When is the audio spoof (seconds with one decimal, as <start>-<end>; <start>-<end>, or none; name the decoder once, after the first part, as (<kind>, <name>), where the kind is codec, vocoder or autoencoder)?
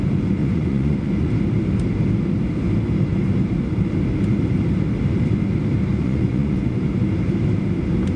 0.4-1.3 (vocoder, Vocos); 5.9-6.8